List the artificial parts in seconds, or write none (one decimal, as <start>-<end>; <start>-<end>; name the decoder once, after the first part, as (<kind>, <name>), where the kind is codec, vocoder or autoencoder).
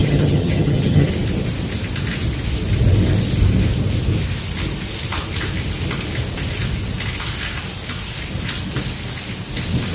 0.0-1.1 (vocoder, HiFi-GAN)